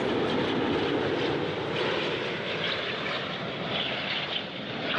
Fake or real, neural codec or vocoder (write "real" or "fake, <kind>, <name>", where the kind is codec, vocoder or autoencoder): real